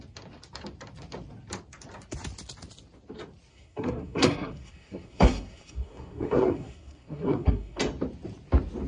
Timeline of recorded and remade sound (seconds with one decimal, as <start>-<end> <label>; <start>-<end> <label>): 0.0-3.5 recorded; 3.5-7.8 remade; 7.8-8.9 recorded